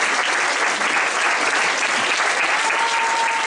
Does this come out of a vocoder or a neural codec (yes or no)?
no